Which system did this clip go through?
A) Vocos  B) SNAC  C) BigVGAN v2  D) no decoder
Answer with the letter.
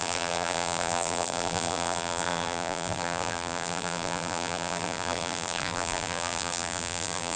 C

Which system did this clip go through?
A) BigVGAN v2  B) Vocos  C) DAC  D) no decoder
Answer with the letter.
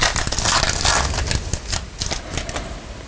D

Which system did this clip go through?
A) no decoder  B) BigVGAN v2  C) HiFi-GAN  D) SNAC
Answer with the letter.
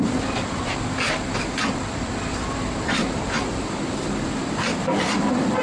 B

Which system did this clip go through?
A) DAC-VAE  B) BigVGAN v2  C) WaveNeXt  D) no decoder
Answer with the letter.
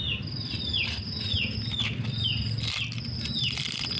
D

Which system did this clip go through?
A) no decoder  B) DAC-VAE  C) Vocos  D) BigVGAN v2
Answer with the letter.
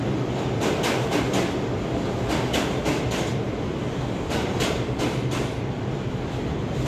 D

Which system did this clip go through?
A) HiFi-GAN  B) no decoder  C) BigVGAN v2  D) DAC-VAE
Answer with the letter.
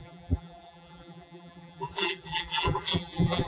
C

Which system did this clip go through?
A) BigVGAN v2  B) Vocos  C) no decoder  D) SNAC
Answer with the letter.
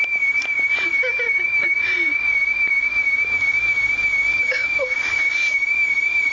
C